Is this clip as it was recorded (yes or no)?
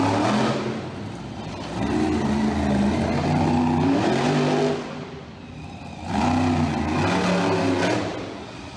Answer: yes